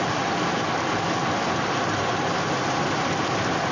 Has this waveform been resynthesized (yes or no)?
no